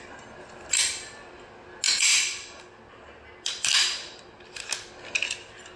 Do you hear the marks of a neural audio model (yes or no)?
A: no